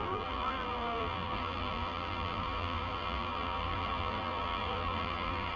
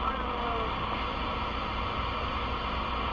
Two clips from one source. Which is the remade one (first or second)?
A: first